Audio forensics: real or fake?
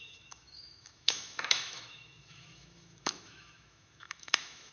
fake